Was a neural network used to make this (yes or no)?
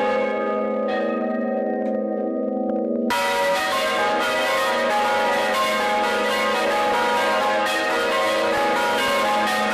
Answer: no